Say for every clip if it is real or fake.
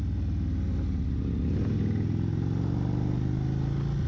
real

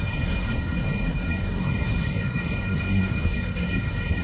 fake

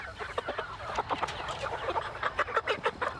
real